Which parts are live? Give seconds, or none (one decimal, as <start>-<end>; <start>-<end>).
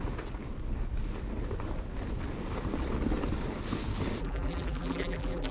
0.0-4.2